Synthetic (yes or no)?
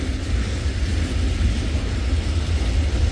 no